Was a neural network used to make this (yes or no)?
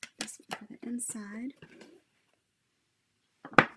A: no